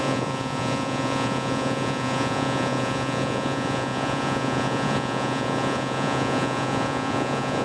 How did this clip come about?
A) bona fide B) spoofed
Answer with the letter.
B